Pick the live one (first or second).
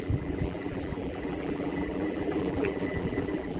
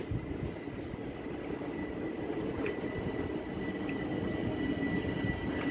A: second